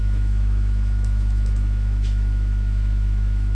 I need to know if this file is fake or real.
fake